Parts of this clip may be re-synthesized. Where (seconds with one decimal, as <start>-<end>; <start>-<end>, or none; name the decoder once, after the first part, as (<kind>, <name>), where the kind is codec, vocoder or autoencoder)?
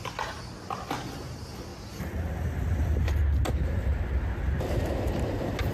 none